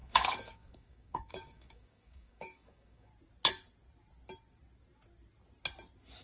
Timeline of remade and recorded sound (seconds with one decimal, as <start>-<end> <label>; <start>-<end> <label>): 0.0-3.1 remade; 3.1-6.2 recorded